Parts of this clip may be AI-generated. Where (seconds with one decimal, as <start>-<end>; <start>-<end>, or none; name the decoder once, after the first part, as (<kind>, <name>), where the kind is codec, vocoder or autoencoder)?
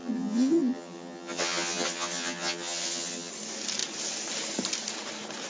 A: 0.0-3.3 (vocoder, HiFi-GAN)